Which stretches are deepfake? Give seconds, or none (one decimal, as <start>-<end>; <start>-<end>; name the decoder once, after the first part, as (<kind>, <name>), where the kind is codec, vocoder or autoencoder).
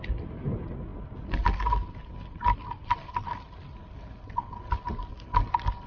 none